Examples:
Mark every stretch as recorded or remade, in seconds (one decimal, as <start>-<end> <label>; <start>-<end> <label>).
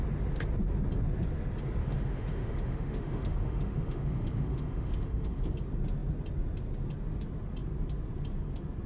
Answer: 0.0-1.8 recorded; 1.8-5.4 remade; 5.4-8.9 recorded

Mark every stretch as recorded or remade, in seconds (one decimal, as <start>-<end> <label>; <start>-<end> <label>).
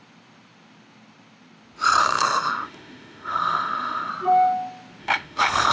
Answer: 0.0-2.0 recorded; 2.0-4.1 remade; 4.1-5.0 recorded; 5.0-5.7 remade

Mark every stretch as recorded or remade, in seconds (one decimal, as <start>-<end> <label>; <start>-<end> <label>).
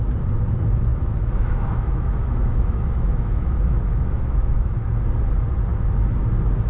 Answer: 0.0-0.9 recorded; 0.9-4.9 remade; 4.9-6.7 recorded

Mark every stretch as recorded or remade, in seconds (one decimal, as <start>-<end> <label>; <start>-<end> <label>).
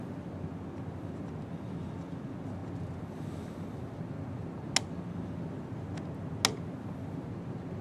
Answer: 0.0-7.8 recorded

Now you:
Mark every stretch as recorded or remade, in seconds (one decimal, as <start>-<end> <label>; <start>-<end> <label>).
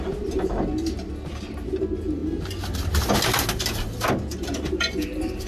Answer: 0.0-5.5 recorded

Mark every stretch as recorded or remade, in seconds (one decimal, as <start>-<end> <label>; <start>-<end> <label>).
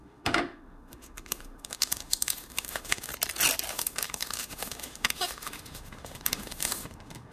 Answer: 0.0-3.1 remade; 3.1-3.7 recorded; 3.7-7.3 remade